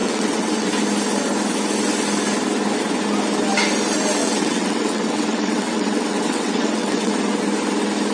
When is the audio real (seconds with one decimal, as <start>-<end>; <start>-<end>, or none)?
0.7-4.2; 7.1-8.1